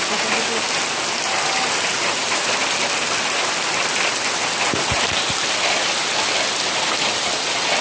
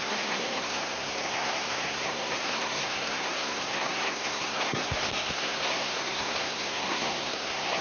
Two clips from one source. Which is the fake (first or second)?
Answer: second